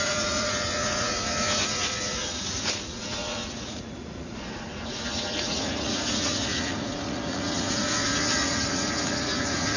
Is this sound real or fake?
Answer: fake